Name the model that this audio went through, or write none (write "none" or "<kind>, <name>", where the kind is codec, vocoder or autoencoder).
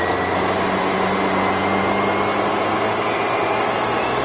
none